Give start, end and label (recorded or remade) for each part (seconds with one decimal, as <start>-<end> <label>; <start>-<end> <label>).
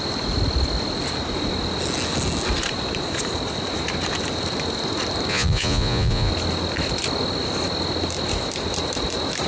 0.0-5.3 recorded; 5.3-6.3 remade; 6.3-9.5 recorded